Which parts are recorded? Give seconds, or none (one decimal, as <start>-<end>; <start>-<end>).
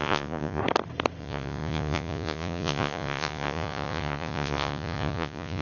0.6-1.2